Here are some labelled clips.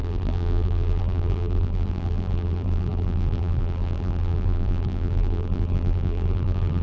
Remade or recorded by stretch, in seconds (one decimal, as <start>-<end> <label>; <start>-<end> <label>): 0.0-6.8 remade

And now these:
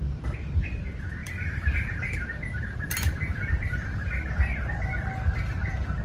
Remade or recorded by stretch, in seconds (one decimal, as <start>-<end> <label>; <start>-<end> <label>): 0.0-1.2 recorded; 1.2-4.8 remade; 4.8-6.0 recorded

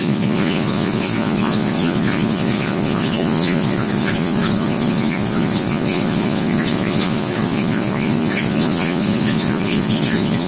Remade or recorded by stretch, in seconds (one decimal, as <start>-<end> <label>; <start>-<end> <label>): 0.0-10.5 remade